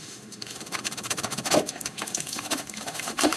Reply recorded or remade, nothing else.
remade